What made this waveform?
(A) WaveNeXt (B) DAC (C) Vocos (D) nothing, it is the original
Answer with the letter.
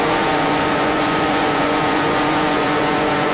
C